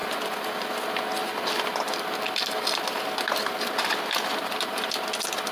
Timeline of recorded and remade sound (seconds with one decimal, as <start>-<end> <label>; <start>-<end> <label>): 0.0-5.5 recorded